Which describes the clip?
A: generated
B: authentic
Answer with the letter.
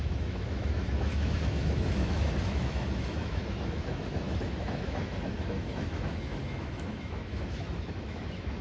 A